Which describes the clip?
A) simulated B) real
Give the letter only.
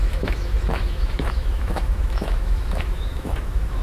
A